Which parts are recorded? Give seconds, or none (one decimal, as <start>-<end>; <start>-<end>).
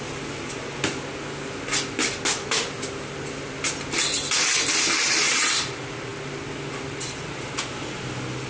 0.0-8.5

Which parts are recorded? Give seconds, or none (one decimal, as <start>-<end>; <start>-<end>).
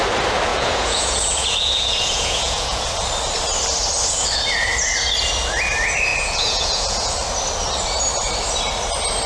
0.0-0.5; 2.8-6.1; 7.1-9.3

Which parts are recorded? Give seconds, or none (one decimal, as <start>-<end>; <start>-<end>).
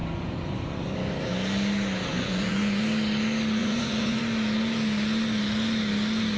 1.1-2.1; 2.8-3.6; 4.2-6.4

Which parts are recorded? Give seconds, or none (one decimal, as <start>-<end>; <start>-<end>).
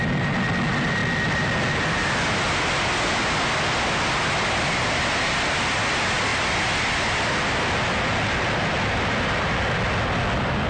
0.0-10.7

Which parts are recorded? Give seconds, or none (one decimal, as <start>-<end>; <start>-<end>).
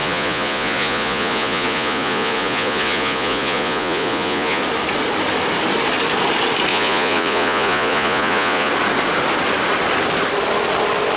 4.6-6.7; 8.7-11.2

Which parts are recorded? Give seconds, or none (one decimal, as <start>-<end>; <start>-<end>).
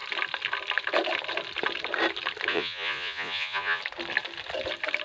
0.0-2.5; 3.8-5.0